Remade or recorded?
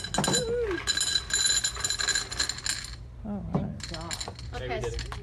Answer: recorded